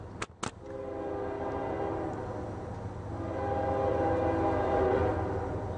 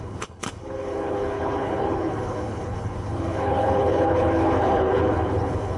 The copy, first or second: second